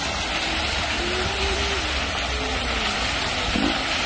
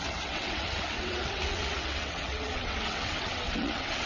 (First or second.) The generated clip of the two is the second